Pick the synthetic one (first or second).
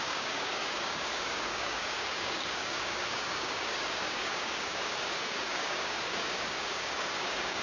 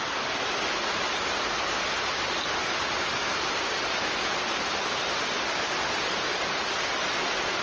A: first